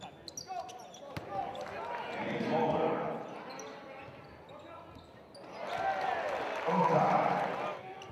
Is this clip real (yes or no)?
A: yes